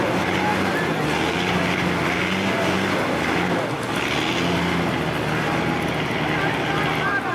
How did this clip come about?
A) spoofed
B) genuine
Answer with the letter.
B